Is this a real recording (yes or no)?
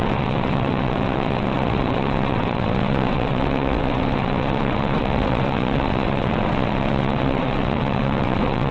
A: no